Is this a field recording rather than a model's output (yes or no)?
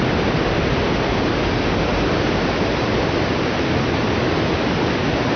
yes